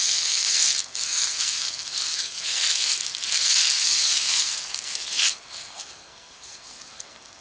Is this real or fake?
fake